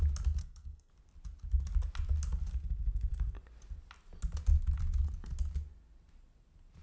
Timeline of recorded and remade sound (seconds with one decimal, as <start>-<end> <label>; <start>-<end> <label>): 0.0-0.4 recorded; 0.4-0.9 remade; 0.9-6.8 recorded